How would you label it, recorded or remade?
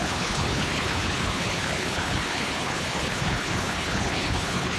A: remade